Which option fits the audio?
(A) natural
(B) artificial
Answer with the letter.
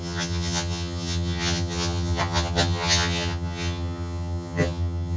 B